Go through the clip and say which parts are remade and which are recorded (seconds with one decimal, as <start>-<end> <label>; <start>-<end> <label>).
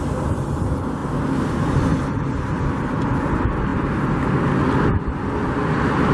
0.0-1.9 recorded; 1.9-2.5 remade; 2.5-6.1 recorded